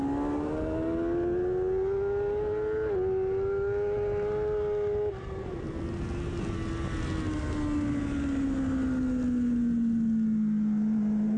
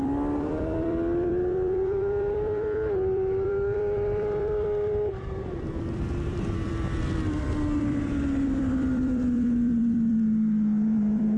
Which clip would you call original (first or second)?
first